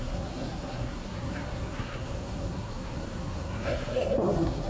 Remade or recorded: remade